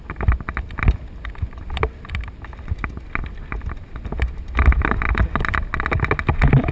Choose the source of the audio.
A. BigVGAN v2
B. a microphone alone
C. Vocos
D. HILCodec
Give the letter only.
B